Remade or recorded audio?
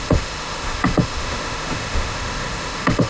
remade